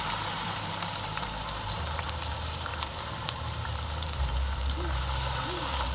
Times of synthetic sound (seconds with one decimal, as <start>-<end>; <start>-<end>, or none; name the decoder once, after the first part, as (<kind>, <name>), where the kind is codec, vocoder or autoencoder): 0.0-5.9 (vocoder, BigVGAN v2)